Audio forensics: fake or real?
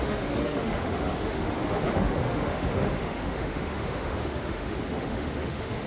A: fake